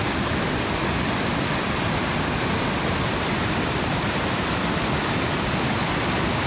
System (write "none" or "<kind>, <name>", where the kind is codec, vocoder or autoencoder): none